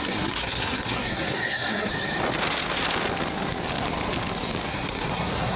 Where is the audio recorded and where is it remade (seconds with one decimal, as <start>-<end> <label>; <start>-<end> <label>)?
0.0-1.9 remade; 1.9-4.7 recorded; 4.7-5.6 remade

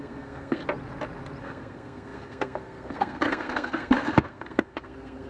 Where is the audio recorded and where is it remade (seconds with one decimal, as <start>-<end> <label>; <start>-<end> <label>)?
0.0-0.6 remade; 0.6-1.4 recorded; 1.4-5.3 remade

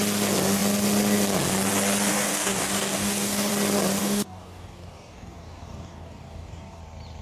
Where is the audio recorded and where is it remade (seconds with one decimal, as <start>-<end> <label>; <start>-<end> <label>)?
0.0-2.1 recorded; 2.1-3.5 remade; 3.5-4.0 recorded; 4.0-6.8 remade; 6.8-7.2 recorded

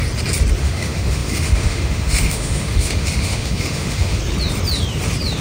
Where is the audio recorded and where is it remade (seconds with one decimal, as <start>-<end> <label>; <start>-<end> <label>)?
0.0-0.6 recorded; 0.6-4.2 remade; 4.2-5.4 recorded